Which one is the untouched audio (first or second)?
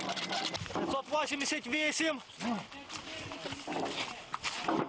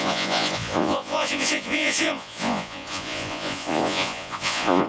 first